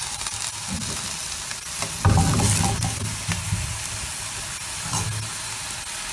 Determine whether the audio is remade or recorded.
recorded